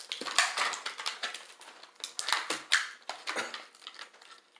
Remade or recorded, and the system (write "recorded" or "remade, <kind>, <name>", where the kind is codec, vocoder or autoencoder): recorded